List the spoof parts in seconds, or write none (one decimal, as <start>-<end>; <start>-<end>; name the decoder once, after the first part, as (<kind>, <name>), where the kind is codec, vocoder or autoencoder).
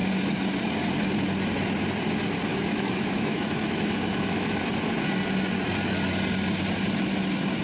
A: 2.5-4.7 (autoencoder, DAC-VAE)